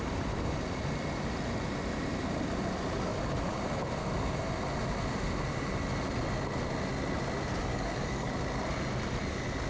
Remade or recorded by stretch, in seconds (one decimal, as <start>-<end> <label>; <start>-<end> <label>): 0.0-7.7 recorded; 7.7-8.3 remade; 8.3-9.7 recorded